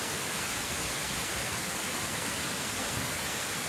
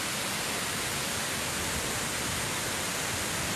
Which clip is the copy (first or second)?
first